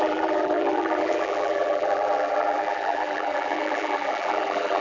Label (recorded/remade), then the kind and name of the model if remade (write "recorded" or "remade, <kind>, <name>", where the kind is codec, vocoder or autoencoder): remade, vocoder, BigVGAN v2